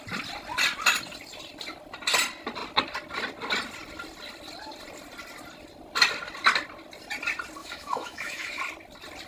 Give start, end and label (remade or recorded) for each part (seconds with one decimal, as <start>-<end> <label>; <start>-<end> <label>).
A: 0.0-7.6 recorded; 7.6-8.6 remade; 8.6-9.3 recorded

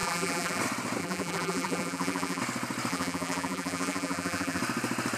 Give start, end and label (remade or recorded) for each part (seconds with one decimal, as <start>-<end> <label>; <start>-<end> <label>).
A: 0.0-0.6 remade; 0.6-1.0 recorded; 1.0-2.4 remade; 2.4-2.9 recorded; 2.9-4.6 remade; 4.6-5.2 recorded

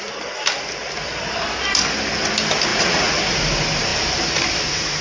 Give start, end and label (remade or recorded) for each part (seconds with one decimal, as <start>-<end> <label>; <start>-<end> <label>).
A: 0.0-2.7 recorded; 2.7-3.2 remade; 3.2-5.0 recorded

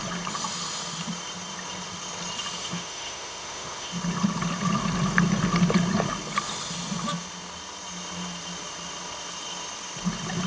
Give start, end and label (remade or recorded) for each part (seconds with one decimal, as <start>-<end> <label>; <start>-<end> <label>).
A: 0.0-2.6 recorded; 2.6-3.9 remade; 3.9-10.5 recorded

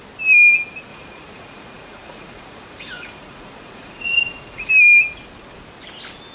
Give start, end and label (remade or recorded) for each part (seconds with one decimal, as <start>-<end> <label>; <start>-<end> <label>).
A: 0.0-0.9 recorded; 0.9-4.7 remade; 4.7-6.3 recorded

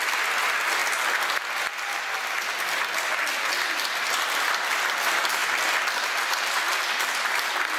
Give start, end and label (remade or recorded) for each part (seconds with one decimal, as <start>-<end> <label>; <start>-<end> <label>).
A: 0.0-7.8 recorded

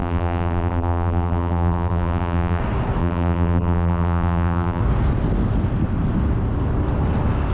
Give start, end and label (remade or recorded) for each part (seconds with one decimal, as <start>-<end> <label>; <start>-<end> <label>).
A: 0.0-2.6 remade; 2.6-3.0 recorded; 3.0-4.8 remade; 4.8-7.5 recorded

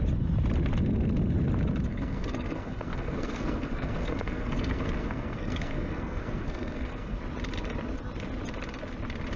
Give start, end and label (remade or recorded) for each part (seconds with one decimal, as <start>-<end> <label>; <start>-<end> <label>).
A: 0.0-1.9 recorded; 1.9-7.2 remade; 7.2-9.4 recorded